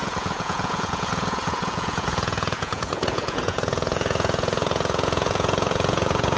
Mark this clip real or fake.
fake